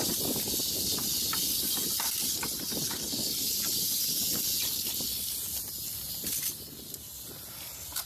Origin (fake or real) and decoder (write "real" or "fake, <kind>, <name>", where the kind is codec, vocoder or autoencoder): real